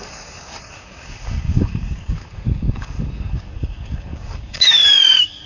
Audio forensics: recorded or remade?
remade